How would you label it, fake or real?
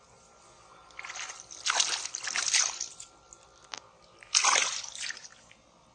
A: real